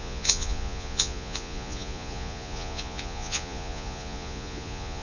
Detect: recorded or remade remade